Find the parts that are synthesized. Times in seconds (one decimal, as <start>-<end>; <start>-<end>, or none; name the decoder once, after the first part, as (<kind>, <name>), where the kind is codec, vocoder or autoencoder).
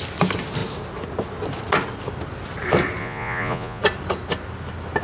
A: 3.0-3.8 (vocoder, Vocos)